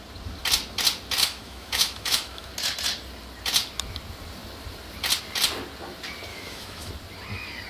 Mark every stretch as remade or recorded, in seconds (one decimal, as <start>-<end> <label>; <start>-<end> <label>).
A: 0.0-1.2 recorded; 1.2-2.5 remade; 2.5-6.3 recorded; 6.3-6.9 remade; 6.9-7.7 recorded